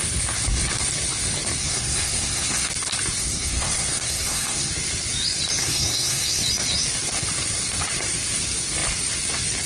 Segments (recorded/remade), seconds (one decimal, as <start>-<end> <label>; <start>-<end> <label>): 0.0-1.6 recorded; 1.6-2.7 remade; 2.7-3.2 recorded; 3.2-4.7 remade; 4.7-5.6 recorded; 5.6-6.4 remade; 6.4-9.7 recorded